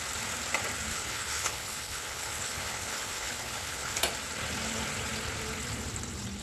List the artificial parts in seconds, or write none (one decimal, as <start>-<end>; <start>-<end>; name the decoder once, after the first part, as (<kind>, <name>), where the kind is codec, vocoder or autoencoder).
0.9-4.0 (codec, HILCodec)